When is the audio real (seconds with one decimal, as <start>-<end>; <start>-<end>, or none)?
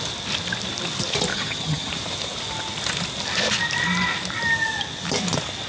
0.0-1.3; 1.9-5.7